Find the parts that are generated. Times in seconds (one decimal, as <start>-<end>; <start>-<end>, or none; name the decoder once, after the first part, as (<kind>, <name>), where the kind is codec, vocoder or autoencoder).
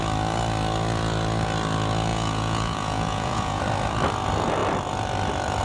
2.1-3.6 (vocoder, Vocos)